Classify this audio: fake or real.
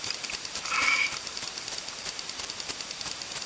fake